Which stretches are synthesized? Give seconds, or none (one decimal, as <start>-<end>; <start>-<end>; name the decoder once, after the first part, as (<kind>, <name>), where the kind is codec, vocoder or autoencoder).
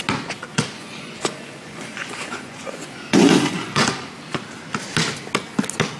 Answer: 0.5-4.1 (vocoder, Vocos)